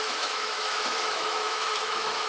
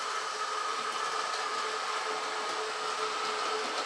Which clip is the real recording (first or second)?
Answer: second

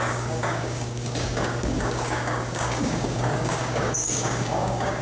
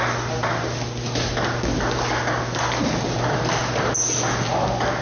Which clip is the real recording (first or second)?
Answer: second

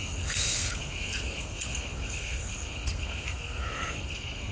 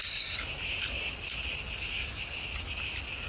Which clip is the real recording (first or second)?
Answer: second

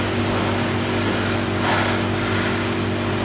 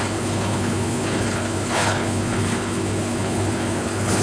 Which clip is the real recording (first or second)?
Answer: first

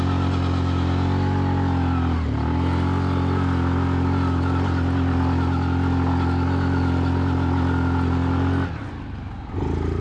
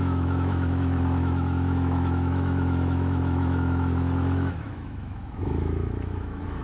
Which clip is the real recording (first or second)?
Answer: first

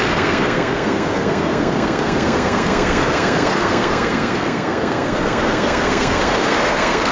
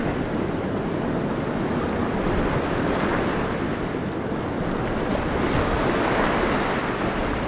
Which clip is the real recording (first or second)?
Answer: second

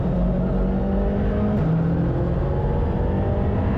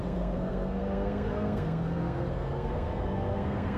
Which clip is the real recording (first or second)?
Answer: first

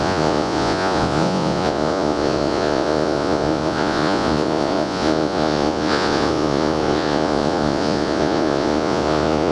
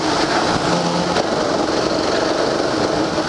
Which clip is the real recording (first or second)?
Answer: second